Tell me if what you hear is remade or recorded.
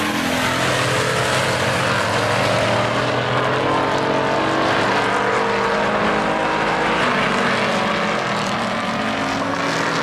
recorded